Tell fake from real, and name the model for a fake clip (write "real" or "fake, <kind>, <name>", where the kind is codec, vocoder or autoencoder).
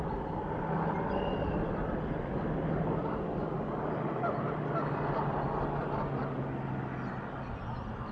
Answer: real